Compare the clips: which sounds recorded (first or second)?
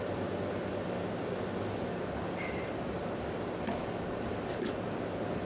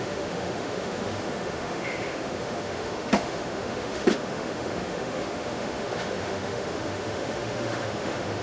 first